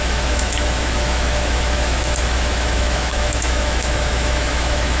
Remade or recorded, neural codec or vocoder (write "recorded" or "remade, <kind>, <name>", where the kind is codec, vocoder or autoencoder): remade, autoencoder, DAC-VAE